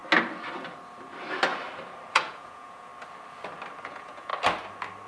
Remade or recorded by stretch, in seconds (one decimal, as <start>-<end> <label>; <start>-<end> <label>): 0.0-2.1 recorded; 2.1-2.9 remade; 2.9-3.8 recorded; 3.8-4.3 remade; 4.3-5.1 recorded